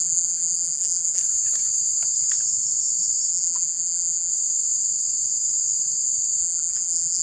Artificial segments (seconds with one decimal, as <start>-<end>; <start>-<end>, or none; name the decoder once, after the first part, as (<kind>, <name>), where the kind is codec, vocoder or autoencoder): 0.0-1.2 (vocoder, BigVGAN v2); 3.3-4.3; 6.4-7.2

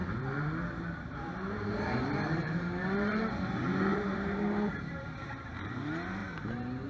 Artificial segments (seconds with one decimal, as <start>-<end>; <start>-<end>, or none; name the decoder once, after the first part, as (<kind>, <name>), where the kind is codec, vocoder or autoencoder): 0.0-3.2 (vocoder, BigVGAN v2); 3.9-5.8